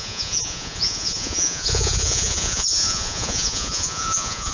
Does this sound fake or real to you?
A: fake